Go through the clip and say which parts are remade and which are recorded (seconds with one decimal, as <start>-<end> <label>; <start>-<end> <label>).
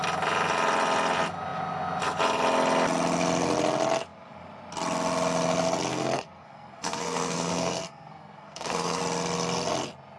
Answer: 0.0-5.9 recorded; 5.9-9.0 remade; 9.0-10.2 recorded